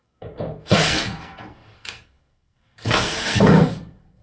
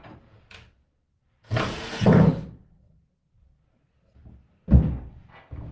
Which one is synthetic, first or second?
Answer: first